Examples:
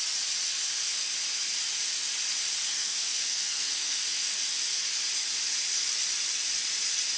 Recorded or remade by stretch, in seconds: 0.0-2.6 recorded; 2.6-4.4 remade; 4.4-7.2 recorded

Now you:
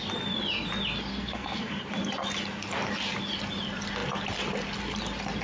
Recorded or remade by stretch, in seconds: 0.0-1.1 recorded; 1.1-1.8 remade; 1.8-5.4 recorded

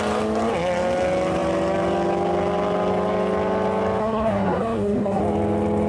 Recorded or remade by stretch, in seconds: 0.0-4.0 recorded; 4.0-5.2 remade; 5.2-5.9 recorded

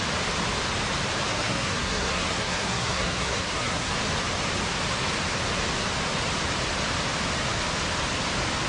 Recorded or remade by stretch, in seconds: 0.0-1.3 recorded; 1.3-3.9 remade; 3.9-8.7 recorded

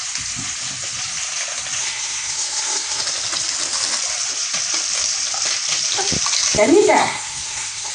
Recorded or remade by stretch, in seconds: 0.0-1.8 recorded; 1.8-3.0 remade; 3.0-7.0 recorded; 7.0-7.9 remade